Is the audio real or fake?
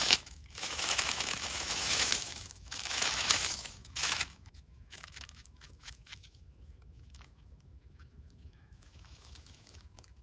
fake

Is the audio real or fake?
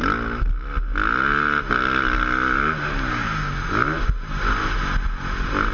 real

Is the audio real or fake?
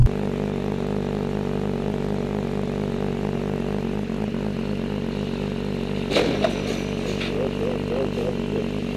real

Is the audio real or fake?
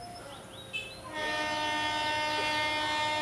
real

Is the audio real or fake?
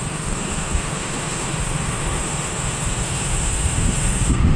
fake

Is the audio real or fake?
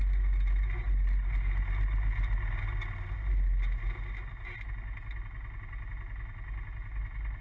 real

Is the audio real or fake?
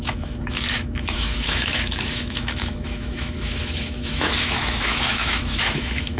fake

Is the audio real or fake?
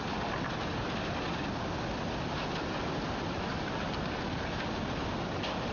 real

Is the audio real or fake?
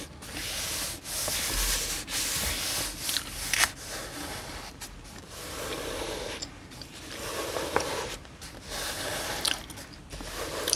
real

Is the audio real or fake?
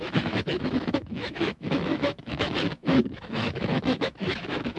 fake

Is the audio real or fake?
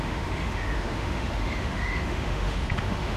fake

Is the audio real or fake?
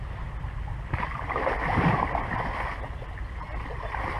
real